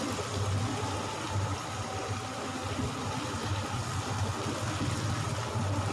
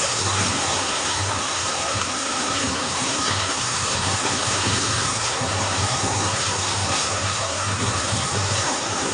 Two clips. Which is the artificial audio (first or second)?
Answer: second